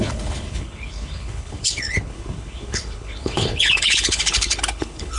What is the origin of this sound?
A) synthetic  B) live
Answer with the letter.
A